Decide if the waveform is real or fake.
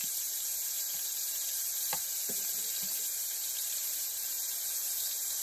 fake